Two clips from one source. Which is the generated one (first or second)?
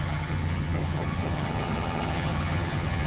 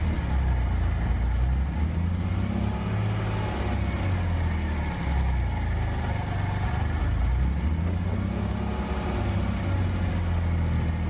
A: first